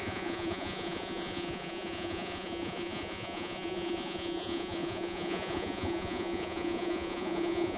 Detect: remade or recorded remade